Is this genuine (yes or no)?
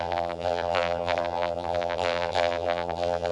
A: no